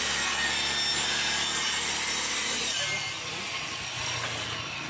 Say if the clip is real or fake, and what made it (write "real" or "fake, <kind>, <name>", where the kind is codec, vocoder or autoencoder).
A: real